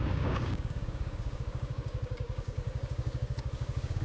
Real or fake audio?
fake